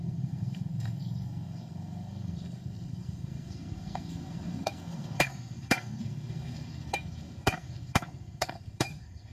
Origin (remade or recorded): remade